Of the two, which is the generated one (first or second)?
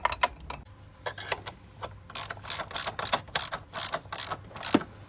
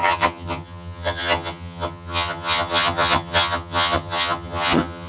second